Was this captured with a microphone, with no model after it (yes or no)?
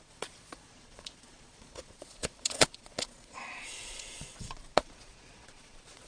no